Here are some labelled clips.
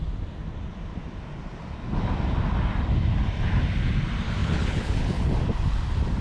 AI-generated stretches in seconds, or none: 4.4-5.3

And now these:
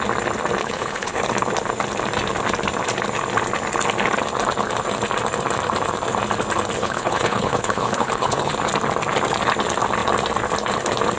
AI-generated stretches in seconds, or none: 0.6-1.2; 6.8-8.5

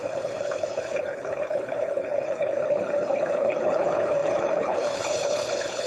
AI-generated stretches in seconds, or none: 0.0-5.9

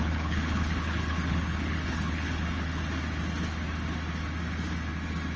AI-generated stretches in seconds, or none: 0.0-2.8

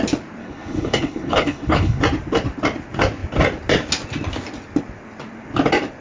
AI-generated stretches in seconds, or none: 0.4-2.0

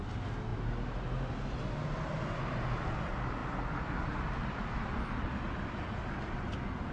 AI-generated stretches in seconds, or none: none

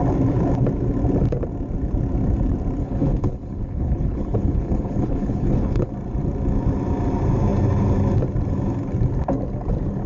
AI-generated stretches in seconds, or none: 2.8-5.9

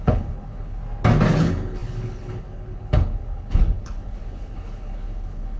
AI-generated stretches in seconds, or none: 0.0-0.8; 1.4-5.6